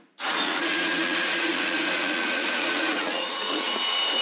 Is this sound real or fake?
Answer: fake